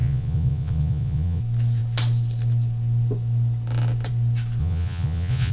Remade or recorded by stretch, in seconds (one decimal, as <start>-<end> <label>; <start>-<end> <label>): 0.0-1.4 remade; 1.4-4.6 recorded; 4.6-5.5 remade